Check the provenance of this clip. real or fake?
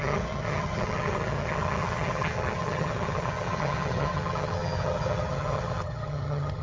fake